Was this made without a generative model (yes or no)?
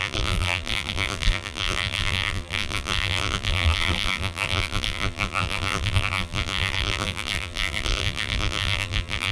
no